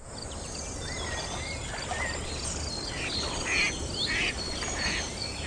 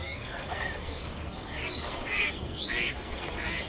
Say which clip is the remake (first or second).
second